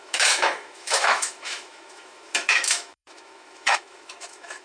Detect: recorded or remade remade